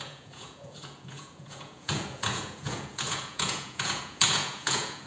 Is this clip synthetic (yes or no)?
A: yes